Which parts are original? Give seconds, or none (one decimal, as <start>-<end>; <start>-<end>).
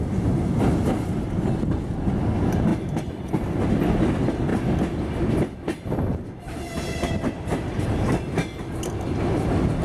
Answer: 0.0-9.8